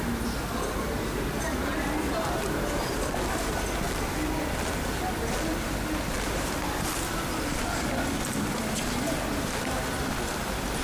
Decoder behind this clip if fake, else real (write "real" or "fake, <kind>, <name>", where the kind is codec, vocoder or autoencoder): real